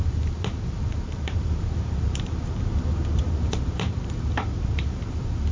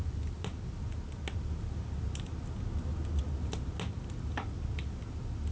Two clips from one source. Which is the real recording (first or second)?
second